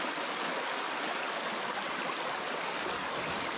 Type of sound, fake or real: real